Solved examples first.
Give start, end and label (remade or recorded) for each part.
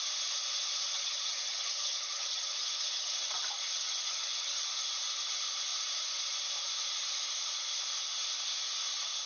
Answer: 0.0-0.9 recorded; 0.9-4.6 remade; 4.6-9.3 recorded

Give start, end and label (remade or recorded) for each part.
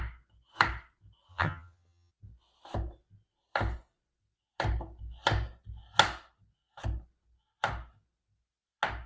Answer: 0.0-1.3 recorded; 1.3-2.1 remade; 2.1-9.1 recorded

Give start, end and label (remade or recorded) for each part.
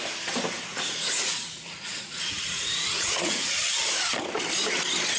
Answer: 0.0-0.7 recorded; 0.7-3.6 remade; 3.6-5.2 recorded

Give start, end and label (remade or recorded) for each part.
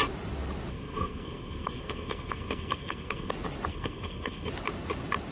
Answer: 0.0-0.7 recorded; 0.7-3.3 remade; 3.3-3.7 recorded; 3.7-4.5 remade; 4.5-5.3 recorded